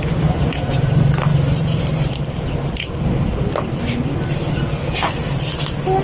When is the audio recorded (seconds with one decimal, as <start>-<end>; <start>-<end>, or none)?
0.0-5.2